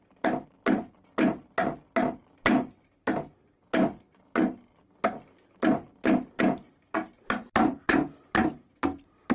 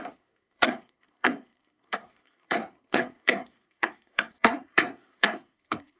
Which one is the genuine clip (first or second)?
first